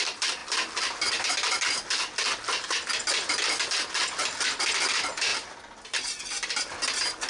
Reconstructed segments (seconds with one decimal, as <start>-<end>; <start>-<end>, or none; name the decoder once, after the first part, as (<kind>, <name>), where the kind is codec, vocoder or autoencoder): none